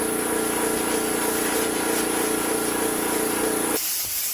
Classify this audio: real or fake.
fake